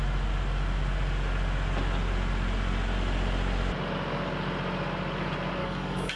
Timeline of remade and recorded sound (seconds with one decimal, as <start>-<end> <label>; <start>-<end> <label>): 0.0-5.6 recorded; 5.6-6.2 remade